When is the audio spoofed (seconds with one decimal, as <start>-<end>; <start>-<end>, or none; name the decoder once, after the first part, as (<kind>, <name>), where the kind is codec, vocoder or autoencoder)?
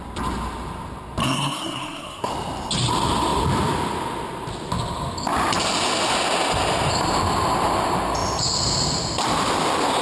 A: 1.2-2.3 (codec, SNAC)